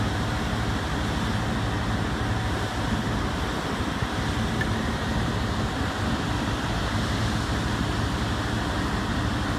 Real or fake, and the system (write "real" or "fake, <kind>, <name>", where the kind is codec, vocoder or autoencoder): real